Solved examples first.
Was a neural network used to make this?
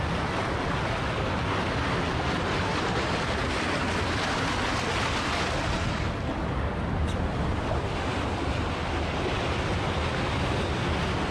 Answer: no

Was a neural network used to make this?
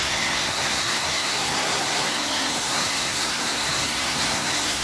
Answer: yes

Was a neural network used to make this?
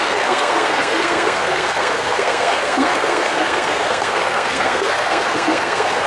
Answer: yes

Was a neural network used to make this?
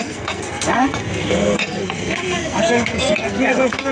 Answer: yes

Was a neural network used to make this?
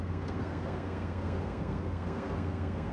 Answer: yes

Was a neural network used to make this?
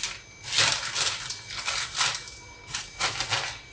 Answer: no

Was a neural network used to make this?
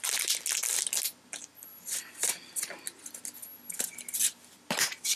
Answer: no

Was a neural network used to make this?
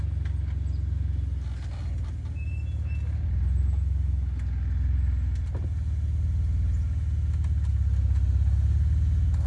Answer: no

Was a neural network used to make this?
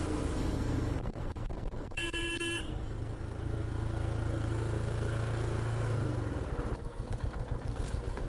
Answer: yes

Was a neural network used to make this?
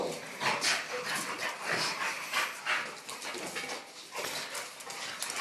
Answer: no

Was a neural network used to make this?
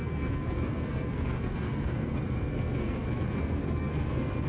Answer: yes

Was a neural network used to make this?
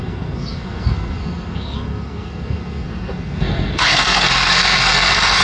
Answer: yes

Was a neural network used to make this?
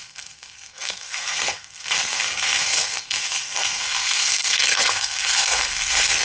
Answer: yes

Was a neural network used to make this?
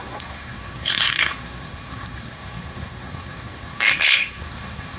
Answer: yes